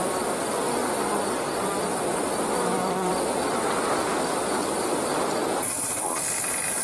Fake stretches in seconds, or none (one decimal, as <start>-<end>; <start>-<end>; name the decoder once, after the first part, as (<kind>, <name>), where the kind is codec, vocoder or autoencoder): 1.9-3.1 (vocoder, BigVGAN v2); 4.6-5.1